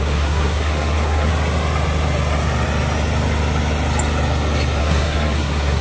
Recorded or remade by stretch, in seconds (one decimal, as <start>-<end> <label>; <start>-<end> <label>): 0.0-1.3 remade; 1.3-4.8 recorded; 4.8-5.8 remade